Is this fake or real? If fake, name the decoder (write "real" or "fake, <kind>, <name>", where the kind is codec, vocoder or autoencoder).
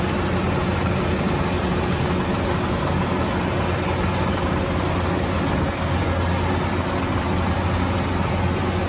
real